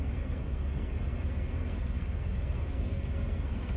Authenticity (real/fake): fake